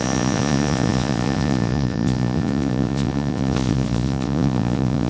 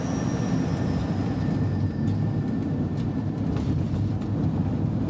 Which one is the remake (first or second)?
first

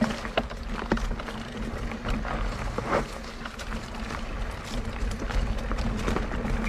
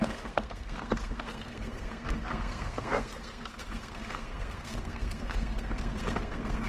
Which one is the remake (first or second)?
second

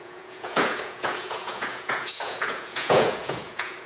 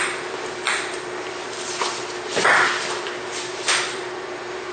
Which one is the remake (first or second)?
first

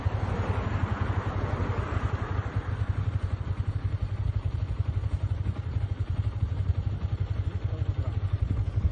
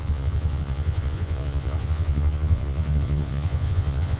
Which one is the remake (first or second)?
second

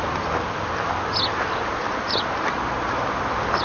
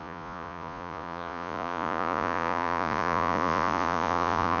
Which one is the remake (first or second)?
second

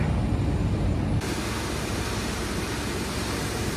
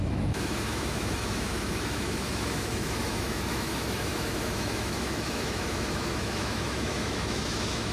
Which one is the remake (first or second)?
second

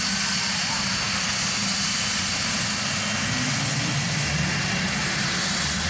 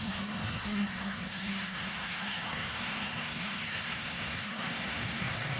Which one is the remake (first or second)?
second